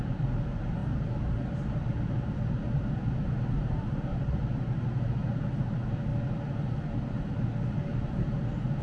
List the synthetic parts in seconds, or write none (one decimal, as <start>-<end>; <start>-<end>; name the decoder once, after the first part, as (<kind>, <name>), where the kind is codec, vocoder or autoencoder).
0.0-6.1 (vocoder, BigVGAN v2); 7.7-8.8